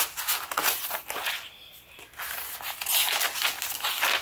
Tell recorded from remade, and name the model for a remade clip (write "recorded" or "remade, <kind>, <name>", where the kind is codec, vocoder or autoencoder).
recorded